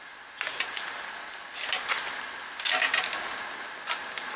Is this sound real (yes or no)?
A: yes